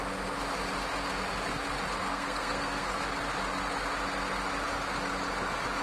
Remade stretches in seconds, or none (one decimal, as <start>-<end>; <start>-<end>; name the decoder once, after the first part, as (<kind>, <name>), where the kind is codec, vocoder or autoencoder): 2.1-2.9 (codec, SNAC)